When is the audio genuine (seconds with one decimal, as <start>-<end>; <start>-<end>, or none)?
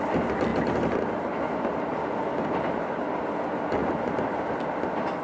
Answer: 0.0-0.5; 1.1-1.9; 3.0-3.8; 4.6-5.2